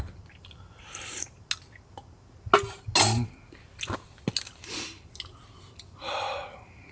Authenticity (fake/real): real